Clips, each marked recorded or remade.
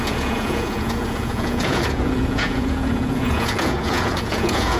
remade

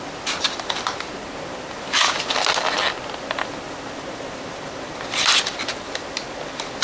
recorded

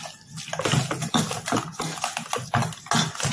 recorded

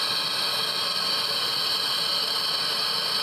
recorded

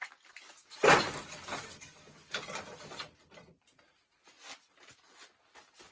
recorded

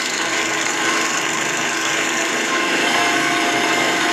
remade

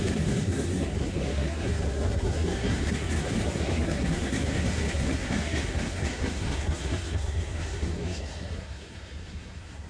remade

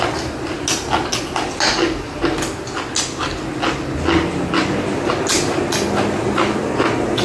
recorded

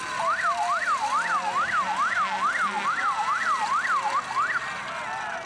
recorded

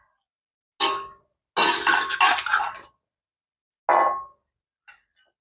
recorded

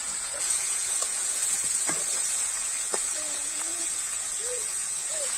remade